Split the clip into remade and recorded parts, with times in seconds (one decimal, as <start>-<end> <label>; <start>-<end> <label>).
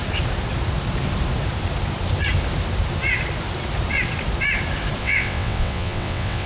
0.0-5.0 recorded; 5.0-6.5 remade